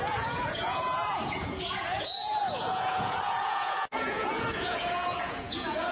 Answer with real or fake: fake